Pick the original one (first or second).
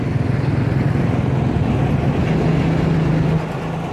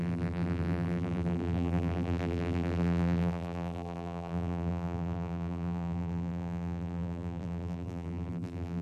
first